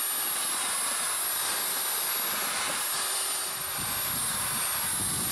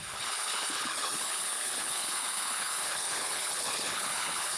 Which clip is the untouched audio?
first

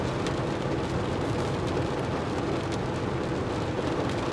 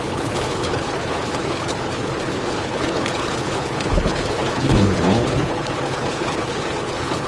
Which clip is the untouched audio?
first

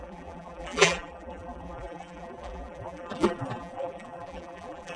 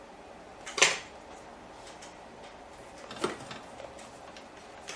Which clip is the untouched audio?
second